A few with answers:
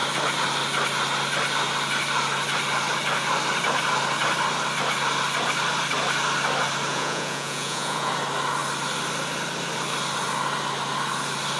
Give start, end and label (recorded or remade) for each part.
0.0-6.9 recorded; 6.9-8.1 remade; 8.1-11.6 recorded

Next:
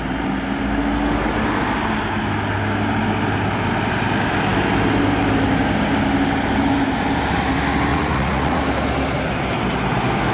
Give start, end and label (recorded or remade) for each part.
0.0-7.9 recorded; 7.9-8.6 remade; 8.6-10.3 recorded